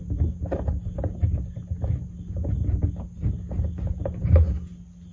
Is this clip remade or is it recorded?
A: recorded